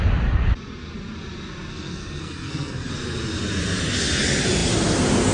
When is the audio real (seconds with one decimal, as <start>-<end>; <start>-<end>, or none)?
0.0-1.7; 2.9-5.3